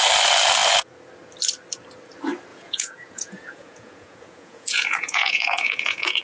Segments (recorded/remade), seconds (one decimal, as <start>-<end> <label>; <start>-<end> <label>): 0.0-2.5 recorded; 2.5-6.2 remade